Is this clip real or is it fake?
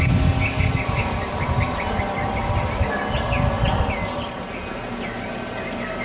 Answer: real